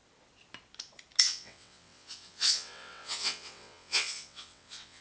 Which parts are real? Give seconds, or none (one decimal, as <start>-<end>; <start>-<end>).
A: 0.0-1.2